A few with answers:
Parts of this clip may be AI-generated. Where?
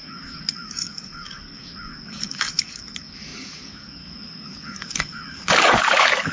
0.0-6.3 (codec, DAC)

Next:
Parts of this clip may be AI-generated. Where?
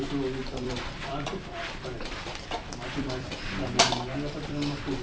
0.4-3.4 (vocoder, BigVGAN v2)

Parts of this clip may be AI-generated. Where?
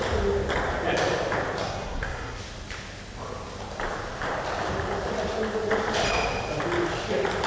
1.6-2.4 (codec, SNAC)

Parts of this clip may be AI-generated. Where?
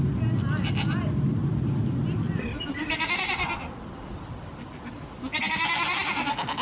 none